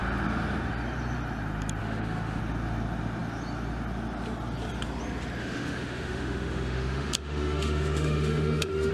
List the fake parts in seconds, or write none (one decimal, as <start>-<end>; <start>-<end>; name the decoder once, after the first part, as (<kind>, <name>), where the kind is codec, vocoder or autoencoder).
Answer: 1.8-2.4 (autoencoder, DAC-VAE); 5.4-8.9